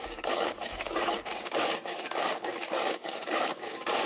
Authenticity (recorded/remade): remade